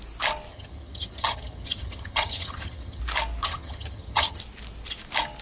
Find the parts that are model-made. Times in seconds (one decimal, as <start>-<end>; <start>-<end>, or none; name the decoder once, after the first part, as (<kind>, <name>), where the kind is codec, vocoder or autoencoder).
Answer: 0.5-3.0 (vocoder, HiFi-GAN); 3.4-4.4